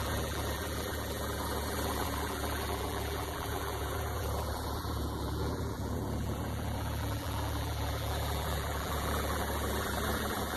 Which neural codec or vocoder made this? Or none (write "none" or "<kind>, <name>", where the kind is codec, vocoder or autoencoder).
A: vocoder, BigVGAN v2